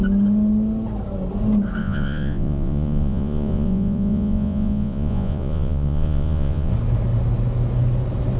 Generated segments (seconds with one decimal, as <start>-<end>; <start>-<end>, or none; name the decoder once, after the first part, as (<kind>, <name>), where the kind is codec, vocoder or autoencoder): 1.8-6.7 (vocoder, Vocos)